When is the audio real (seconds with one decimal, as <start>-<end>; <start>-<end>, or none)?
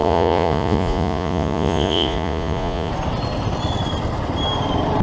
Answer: 2.9-5.0